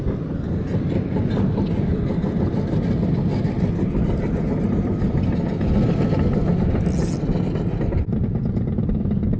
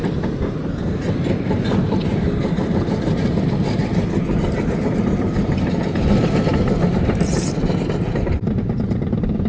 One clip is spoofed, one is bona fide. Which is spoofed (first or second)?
second